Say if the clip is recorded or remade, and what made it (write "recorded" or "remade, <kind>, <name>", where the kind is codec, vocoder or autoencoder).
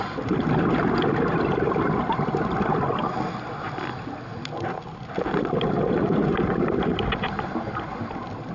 recorded